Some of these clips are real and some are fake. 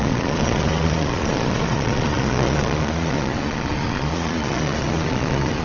fake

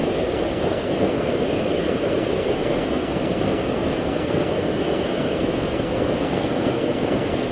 fake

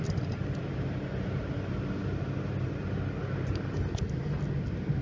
real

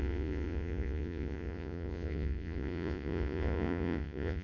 fake